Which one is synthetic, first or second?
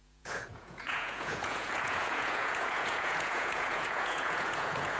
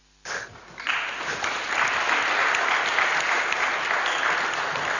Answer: first